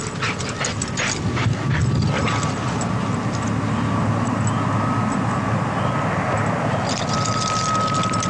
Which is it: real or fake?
real